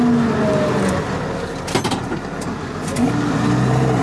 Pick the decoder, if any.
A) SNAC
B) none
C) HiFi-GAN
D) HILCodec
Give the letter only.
B